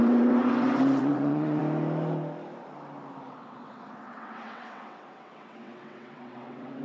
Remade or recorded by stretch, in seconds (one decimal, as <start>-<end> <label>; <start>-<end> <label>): 0.0-1.6 remade; 1.6-3.3 recorded; 3.3-6.8 remade